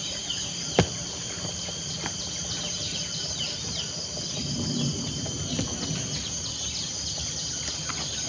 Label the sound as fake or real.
real